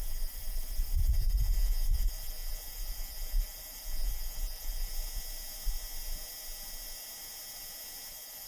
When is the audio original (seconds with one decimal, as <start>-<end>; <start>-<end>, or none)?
4.9-8.1